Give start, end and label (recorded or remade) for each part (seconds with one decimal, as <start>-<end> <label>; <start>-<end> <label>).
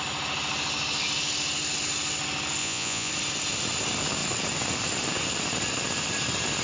0.0-2.6 recorded; 2.6-3.1 remade; 3.1-6.6 recorded